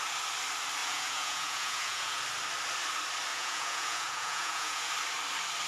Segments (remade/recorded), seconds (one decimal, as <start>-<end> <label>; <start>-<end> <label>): 0.0-0.8 recorded; 0.8-2.2 remade; 2.2-3.3 recorded; 3.3-4.9 remade; 4.9-5.7 recorded